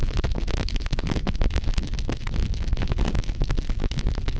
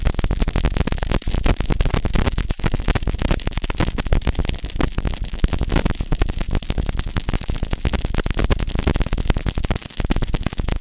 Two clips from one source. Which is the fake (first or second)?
first